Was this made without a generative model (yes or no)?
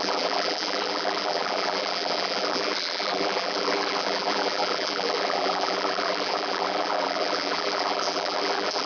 no